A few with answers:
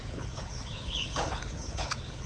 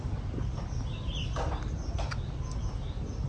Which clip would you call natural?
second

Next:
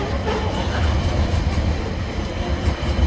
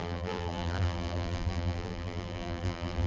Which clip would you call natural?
first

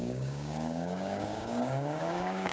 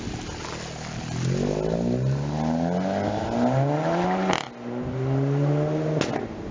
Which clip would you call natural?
second